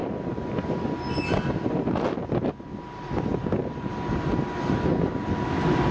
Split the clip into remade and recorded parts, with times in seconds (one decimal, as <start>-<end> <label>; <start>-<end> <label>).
0.0-5.9 recorded